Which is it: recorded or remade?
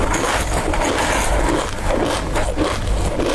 recorded